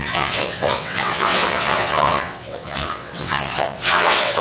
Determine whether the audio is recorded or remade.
remade